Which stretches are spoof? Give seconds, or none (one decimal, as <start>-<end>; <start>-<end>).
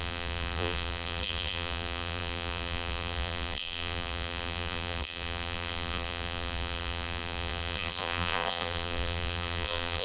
0.0-10.0